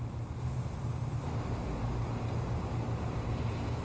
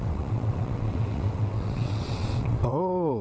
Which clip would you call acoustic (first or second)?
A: first